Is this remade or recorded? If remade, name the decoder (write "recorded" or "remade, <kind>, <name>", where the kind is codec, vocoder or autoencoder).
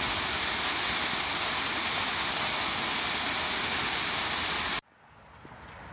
recorded